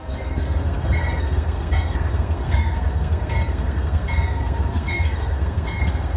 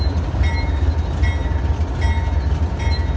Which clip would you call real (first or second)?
second